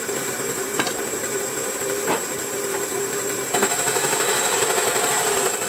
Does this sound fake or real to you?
fake